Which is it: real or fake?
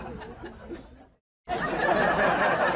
real